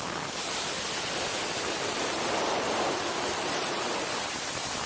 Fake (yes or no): yes